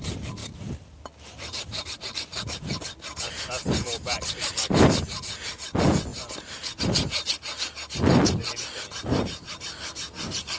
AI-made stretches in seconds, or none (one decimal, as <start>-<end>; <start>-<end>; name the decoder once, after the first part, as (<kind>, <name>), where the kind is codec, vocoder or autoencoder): none